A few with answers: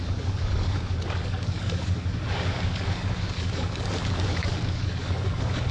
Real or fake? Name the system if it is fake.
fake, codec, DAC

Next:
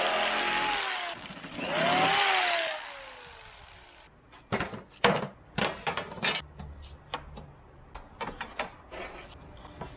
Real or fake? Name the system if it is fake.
real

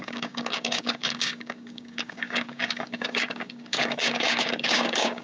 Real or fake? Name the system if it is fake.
fake, codec, DAC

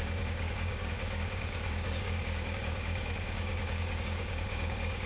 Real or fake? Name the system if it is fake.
fake, codec, DAC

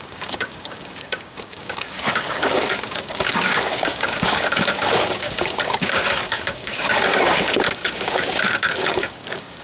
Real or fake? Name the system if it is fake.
fake, codec, DAC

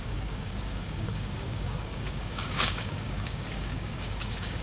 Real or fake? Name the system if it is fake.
fake, codec, DAC